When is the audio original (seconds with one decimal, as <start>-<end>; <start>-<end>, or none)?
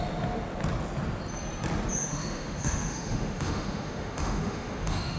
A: 0.0-2.0